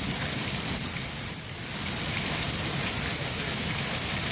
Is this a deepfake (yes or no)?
no